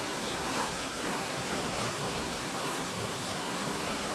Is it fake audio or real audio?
fake